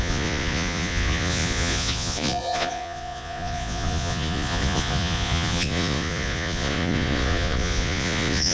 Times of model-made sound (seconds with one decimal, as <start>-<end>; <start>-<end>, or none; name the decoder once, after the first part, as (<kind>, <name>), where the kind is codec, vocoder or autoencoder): 0.0-8.5 (vocoder, Vocos)